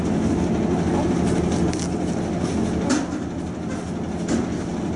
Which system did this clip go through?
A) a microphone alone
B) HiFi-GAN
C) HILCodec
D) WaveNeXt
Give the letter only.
A